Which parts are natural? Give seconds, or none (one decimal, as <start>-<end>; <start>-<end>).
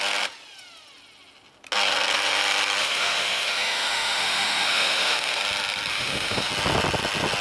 0.0-2.8; 5.4-5.9; 6.5-7.4